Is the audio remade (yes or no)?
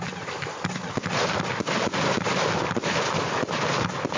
no